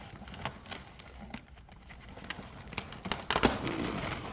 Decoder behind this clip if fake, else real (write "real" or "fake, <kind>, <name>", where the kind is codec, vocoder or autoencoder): real